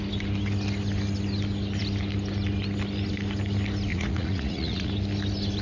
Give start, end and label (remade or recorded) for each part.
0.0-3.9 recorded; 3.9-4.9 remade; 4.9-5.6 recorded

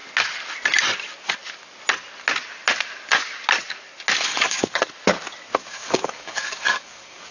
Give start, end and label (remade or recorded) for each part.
0.0-4.3 recorded; 4.3-4.8 remade; 4.8-5.6 recorded; 5.6-7.3 remade

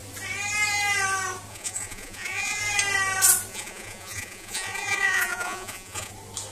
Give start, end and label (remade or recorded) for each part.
0.0-1.5 recorded; 1.5-2.6 remade; 2.6-3.5 recorded; 3.5-6.1 remade; 6.1-6.5 recorded

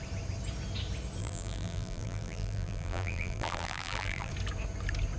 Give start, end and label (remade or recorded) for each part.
0.0-1.2 recorded; 1.2-4.3 remade; 4.3-5.2 recorded